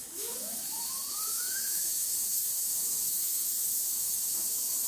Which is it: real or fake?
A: fake